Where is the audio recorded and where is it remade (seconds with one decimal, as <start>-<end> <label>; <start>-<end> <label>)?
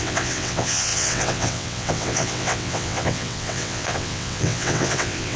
0.0-5.4 remade